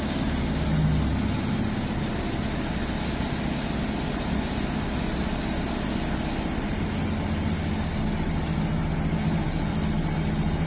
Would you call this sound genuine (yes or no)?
yes